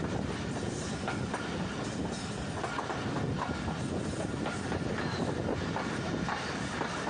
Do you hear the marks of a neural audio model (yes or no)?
no